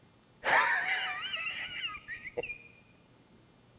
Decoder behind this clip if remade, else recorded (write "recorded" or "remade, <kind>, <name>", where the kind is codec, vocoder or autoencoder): recorded